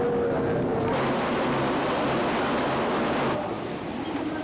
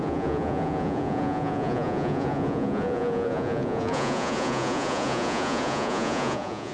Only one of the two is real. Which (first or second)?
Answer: first